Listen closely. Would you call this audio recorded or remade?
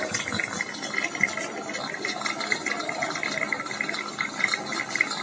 recorded